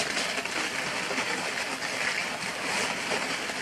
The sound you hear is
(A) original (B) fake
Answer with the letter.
A